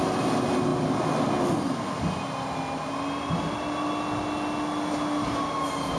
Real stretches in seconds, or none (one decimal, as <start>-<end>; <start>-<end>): 0.0-6.0